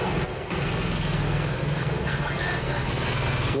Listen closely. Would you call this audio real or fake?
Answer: fake